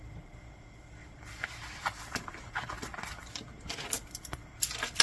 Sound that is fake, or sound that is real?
real